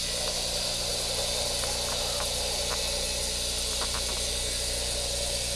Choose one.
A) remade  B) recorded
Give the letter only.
B